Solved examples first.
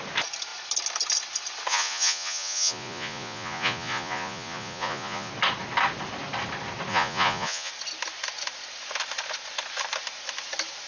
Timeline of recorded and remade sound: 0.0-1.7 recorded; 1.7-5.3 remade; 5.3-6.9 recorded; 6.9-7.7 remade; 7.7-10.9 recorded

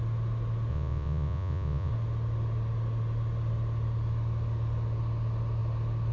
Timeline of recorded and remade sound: 0.0-0.7 recorded; 0.7-1.9 remade; 1.9-6.1 recorded

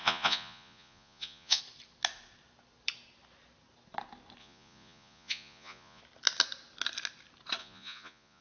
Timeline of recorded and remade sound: 0.0-1.6 remade; 1.6-4.4 recorded; 4.4-6.0 remade; 6.0-7.6 recorded; 7.6-8.4 remade

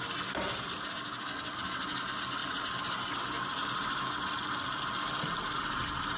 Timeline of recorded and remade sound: 0.0-6.2 recorded

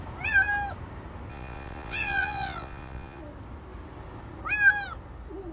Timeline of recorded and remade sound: 0.0-1.3 recorded; 1.3-3.2 remade; 3.2-5.5 recorded

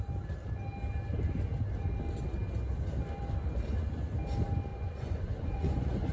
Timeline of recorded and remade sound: 0.0-4.7 recorded; 4.7-6.1 remade

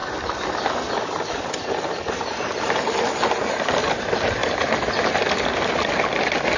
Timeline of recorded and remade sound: 0.0-6.6 recorded